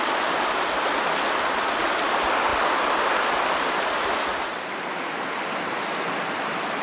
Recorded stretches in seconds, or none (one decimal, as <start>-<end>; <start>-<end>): 2.5-3.8